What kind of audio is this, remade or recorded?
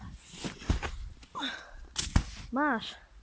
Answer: recorded